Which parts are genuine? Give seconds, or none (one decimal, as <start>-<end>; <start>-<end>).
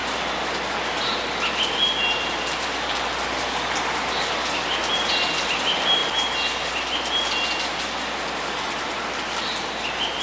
0.0-10.2